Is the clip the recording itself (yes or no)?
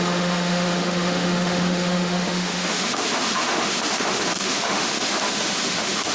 no